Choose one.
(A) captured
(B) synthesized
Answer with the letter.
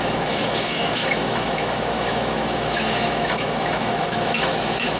B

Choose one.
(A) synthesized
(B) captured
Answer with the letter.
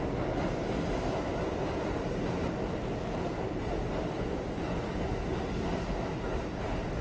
B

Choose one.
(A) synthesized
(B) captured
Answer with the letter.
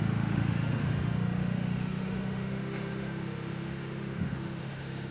A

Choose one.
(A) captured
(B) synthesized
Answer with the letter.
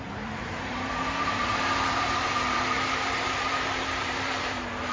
B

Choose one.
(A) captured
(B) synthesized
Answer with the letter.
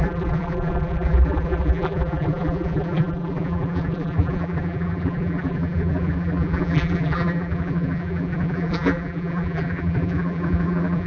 B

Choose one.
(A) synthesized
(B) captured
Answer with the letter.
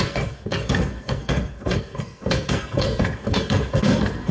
A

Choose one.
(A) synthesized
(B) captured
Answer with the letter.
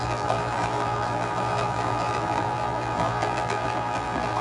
A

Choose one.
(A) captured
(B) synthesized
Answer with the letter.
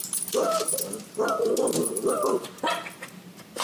A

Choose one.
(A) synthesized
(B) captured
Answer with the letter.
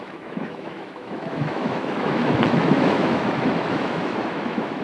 A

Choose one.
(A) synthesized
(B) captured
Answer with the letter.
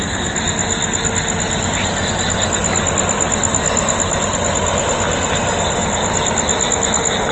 B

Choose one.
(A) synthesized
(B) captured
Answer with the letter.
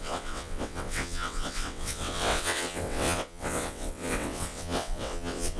A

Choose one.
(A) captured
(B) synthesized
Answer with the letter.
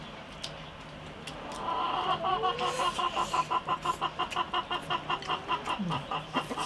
A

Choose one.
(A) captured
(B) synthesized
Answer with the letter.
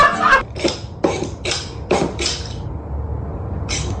A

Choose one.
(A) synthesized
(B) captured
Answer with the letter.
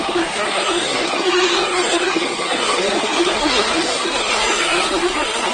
A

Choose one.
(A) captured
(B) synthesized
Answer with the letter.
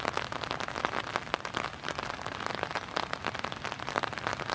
A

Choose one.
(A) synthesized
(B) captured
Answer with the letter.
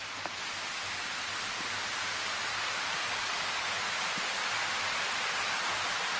B